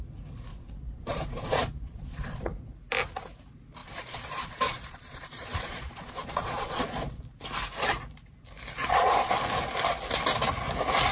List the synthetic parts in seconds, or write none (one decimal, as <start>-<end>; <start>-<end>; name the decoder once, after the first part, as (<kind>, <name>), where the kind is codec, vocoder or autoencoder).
0.5-2.6 (vocoder, Vocos); 3.8-7.2; 8.8-9.3